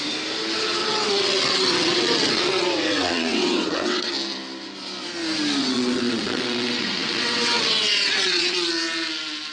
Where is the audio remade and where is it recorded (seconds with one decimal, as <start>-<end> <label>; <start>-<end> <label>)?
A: 0.0-0.8 recorded; 0.8-4.1 remade; 4.1-5.6 recorded; 5.6-8.7 remade; 8.7-9.5 recorded